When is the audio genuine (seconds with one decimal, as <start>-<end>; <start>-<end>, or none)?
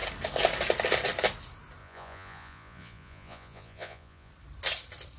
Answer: 0.0-1.8; 4.3-5.2